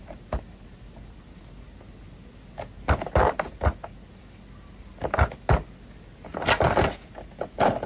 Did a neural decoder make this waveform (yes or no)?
no